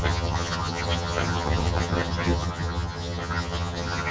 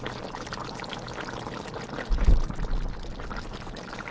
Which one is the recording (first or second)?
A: second